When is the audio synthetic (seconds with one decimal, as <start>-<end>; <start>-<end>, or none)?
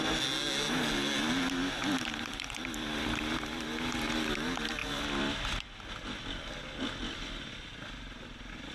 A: 1.8-3.2; 4.8-5.9